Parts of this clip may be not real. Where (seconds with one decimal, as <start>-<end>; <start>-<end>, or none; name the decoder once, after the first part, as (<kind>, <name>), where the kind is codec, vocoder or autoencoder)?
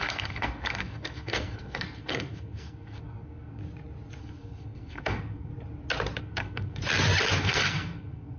0.0-3.6 (codec, SNAC); 4.2-5.5; 6.2-6.8; 7.4-8.4